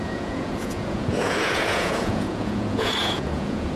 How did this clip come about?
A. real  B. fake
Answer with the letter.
B